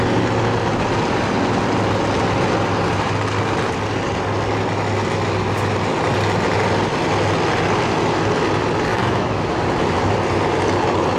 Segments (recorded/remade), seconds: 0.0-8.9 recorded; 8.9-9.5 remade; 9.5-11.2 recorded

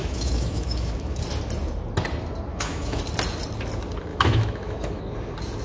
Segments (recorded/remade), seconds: 0.0-1.2 remade; 1.2-2.5 recorded; 2.5-3.0 remade; 3.0-4.1 recorded; 4.1-5.0 remade; 5.0-5.6 recorded

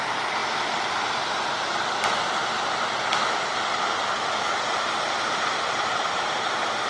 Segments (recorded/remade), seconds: 0.0-0.4 remade; 0.4-4.5 recorded; 4.5-6.9 remade

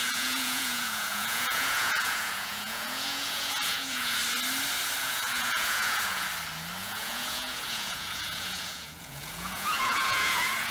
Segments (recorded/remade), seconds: 0.0-4.2 remade; 4.2-5.0 recorded; 5.0-6.3 remade; 6.3-6.8 recorded; 6.8-10.7 remade

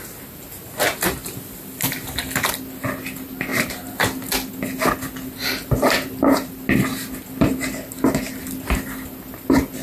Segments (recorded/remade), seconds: 0.0-9.8 recorded

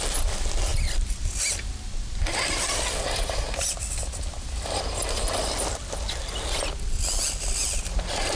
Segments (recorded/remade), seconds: 0.0-8.3 recorded